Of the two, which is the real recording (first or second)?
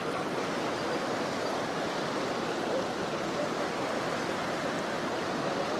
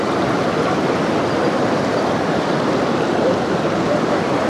first